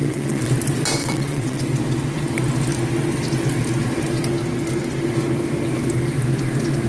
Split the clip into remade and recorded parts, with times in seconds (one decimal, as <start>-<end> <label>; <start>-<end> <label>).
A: 0.0-0.5 remade; 0.5-1.0 recorded; 1.0-1.6 remade; 1.6-6.9 recorded